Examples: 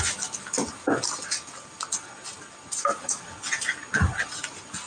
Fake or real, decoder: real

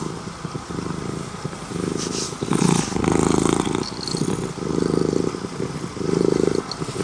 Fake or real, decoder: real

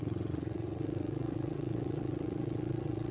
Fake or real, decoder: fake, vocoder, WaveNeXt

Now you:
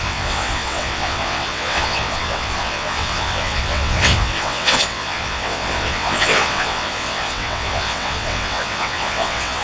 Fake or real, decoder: fake, vocoder, WaveNeXt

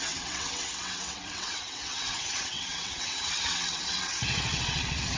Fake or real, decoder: fake, vocoder, WaveNeXt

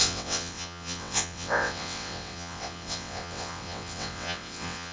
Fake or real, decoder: fake, vocoder, WaveNeXt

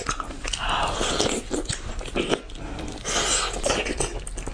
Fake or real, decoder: real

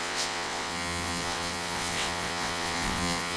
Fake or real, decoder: fake, vocoder, WaveNeXt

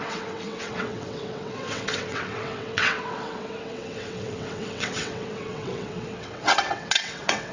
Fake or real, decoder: fake, vocoder, WaveNeXt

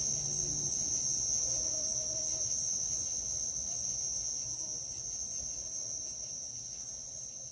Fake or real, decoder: real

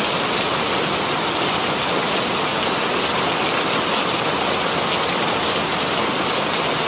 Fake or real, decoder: real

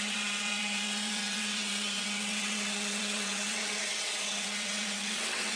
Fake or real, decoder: fake, vocoder, WaveNeXt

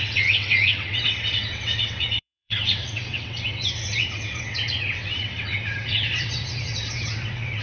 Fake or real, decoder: fake, vocoder, WaveNeXt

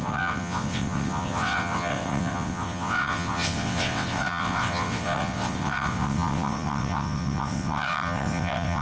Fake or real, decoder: fake, vocoder, WaveNeXt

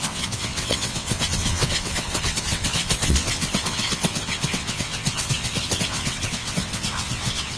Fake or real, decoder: fake, vocoder, WaveNeXt